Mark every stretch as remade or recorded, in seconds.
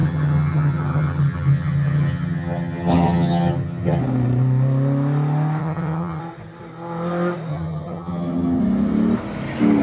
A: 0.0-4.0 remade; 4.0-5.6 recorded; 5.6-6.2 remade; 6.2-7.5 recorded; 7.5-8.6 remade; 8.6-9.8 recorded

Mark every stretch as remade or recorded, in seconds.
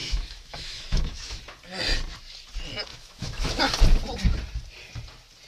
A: 0.0-1.4 remade; 1.4-2.9 recorded; 2.9-3.6 remade; 3.6-5.5 recorded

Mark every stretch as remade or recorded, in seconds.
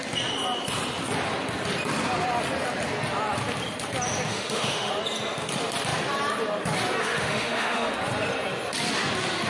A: 0.0-4.3 recorded; 4.3-4.9 remade; 4.9-7.0 recorded; 7.0-7.9 remade; 7.9-9.5 recorded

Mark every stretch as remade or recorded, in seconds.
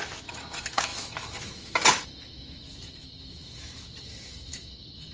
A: 0.0-5.1 remade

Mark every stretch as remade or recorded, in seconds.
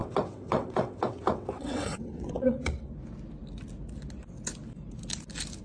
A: 0.0-2.9 remade; 2.9-5.6 recorded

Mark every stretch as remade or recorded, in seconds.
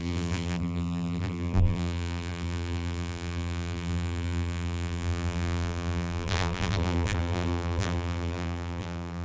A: 0.0-9.2 remade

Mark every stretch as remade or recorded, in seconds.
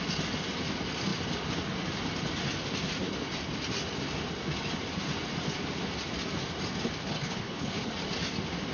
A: 0.0-7.1 recorded; 7.1-7.9 remade; 7.9-8.7 recorded